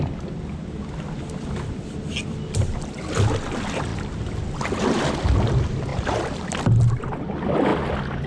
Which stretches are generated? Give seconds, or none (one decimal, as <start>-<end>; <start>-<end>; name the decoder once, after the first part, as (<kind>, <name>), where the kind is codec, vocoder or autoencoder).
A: none